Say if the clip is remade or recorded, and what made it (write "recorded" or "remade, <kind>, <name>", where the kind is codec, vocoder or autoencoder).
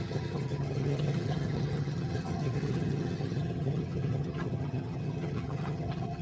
remade, vocoder, HiFi-GAN